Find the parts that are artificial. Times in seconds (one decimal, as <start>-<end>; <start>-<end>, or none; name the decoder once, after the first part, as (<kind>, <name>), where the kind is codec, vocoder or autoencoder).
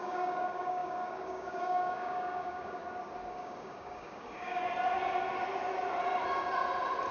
0.0-2.8 (codec, DAC); 3.3-4.6